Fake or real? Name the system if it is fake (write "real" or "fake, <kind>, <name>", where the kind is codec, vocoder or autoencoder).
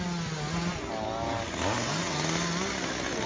real